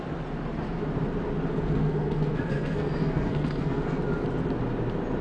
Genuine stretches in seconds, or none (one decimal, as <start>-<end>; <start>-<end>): 0.0-1.5; 4.0-5.2